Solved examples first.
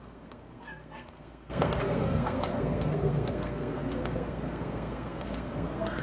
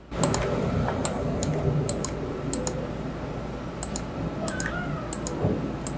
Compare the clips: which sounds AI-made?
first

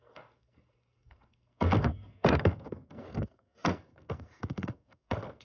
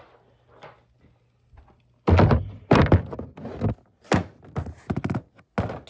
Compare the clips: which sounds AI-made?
first